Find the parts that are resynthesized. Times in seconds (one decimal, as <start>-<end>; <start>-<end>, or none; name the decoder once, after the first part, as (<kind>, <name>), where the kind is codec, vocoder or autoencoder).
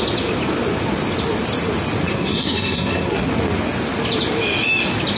2.1-3.3 (codec, SNAC)